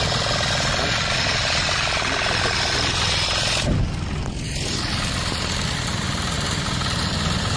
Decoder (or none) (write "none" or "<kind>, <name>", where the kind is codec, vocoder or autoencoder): none